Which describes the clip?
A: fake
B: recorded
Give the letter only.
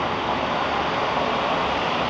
B